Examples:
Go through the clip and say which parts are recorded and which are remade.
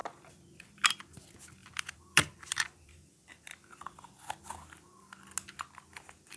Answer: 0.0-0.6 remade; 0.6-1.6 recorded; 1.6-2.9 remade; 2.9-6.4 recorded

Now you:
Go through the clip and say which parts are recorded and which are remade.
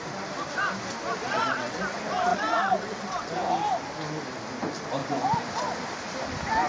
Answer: 0.0-1.2 recorded; 1.2-1.8 remade; 1.8-2.3 recorded; 2.3-3.3 remade; 3.3-6.7 recorded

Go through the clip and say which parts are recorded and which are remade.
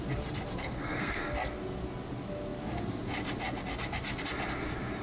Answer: 0.0-0.6 recorded; 0.6-1.3 remade; 1.3-5.0 recorded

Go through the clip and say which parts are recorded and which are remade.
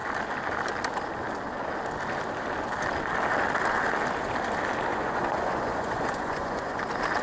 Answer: 0.0-4.9 recorded; 4.9-6.8 remade; 6.8-7.2 recorded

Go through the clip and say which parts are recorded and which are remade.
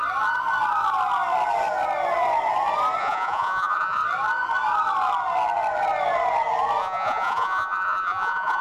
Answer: 0.0-3.0 recorded; 3.0-4.0 remade; 4.0-6.8 recorded; 6.8-8.6 remade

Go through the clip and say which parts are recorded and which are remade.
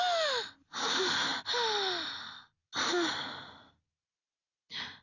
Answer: 0.0-5.0 recorded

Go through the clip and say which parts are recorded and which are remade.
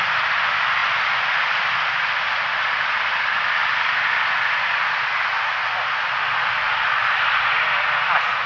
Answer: 0.0-8.5 recorded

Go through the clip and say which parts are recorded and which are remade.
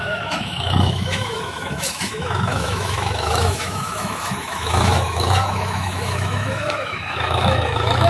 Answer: 0.0-8.1 remade